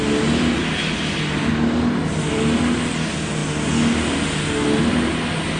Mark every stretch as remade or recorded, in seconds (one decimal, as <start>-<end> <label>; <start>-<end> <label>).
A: 0.0-5.6 recorded